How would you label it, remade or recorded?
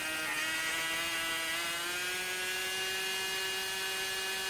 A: recorded